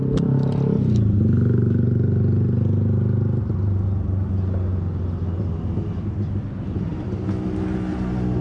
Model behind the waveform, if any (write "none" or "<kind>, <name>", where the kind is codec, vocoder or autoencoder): none